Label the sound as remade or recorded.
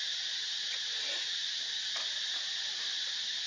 recorded